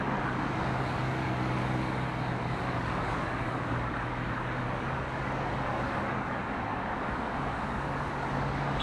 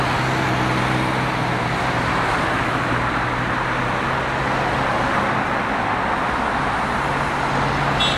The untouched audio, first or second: second